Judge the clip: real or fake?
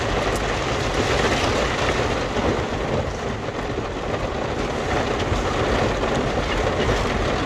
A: real